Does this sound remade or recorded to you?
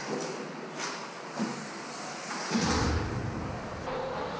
recorded